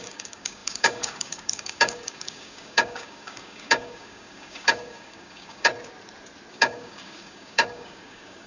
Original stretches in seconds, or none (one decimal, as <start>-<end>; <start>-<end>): 5.7-6.5